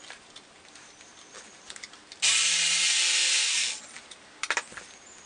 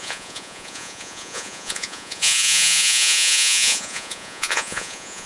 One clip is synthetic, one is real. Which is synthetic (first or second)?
second